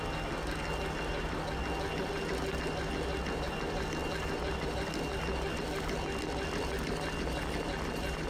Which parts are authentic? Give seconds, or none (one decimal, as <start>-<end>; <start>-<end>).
0.0-8.3